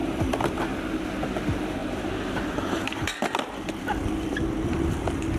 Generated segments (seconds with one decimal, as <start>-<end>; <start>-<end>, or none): 0.0-0.6; 1.8-5.0